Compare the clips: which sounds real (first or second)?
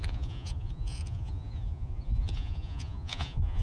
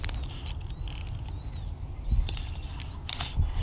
second